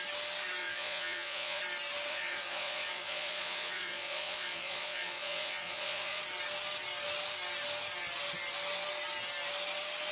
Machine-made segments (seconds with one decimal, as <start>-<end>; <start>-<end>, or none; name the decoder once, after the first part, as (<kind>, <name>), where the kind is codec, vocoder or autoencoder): 0.6-1.6 (vocoder, Vocos); 2.1-6.2